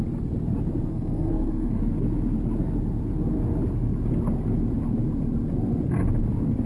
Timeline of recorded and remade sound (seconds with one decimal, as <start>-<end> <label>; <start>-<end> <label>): 0.0-0.9 recorded; 0.9-1.8 remade; 1.8-6.7 recorded